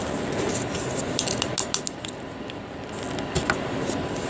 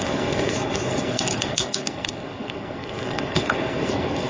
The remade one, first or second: second